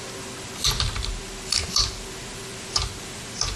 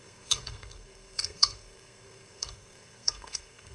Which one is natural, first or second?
first